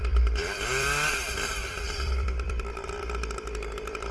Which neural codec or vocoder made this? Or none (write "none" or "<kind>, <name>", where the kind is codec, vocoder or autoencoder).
vocoder, BigVGAN v2